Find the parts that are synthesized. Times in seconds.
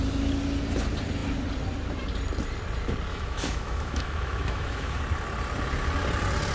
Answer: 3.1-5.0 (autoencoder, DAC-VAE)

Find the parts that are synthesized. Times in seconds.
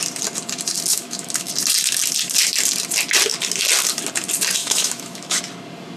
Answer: 0.9-1.5 (autoencoder, DAC-VAE); 4.6-5.4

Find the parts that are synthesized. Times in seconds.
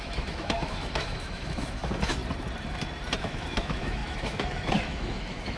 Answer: 0.0-2.2 (autoencoder, DAC-VAE); 3.2-5.6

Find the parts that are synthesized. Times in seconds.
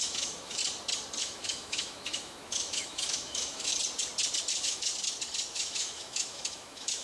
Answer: 0.0-0.6 (autoencoder, DAC-VAE); 1.2-3.7; 4.5-4.9; 5.5-7.0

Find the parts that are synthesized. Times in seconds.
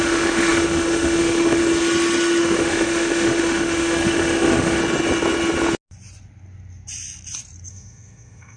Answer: 0.0-1.6 (autoencoder, DAC-VAE); 2.4-4.8; 7.7-8.6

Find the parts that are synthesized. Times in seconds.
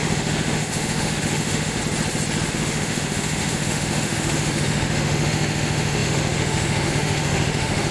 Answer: 0.0-1.8 (autoencoder, DAC-VAE); 2.5-7.9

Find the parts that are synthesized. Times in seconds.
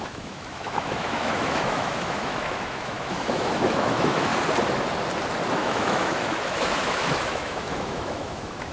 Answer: 0.0-4.3 (autoencoder, DAC-VAE); 5.5-8.7